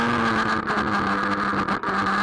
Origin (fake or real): real